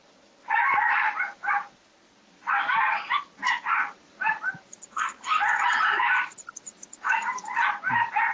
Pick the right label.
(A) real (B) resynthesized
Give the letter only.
A